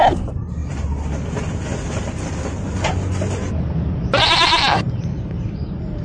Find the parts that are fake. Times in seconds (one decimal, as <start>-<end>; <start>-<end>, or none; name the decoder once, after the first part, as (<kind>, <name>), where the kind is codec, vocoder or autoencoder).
0.0-0.6 (vocoder, BigVGAN v2); 4.2-6.0